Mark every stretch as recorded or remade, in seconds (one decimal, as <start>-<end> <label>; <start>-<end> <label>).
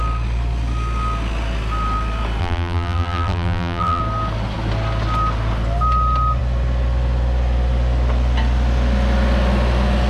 0.0-2.4 recorded; 2.4-4.0 remade; 4.0-10.1 recorded